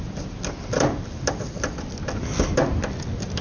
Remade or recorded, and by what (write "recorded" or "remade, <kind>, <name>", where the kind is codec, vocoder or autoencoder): recorded